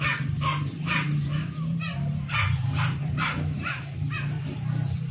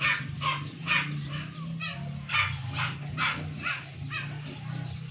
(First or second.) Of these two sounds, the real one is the second